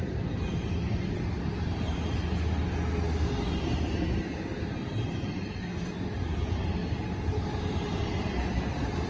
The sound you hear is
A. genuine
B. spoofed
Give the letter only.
A